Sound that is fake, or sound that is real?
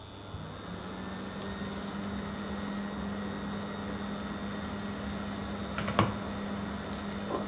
real